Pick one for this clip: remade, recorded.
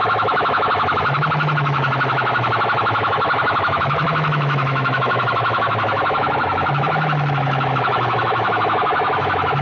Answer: remade